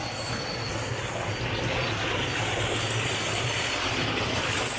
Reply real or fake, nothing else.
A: real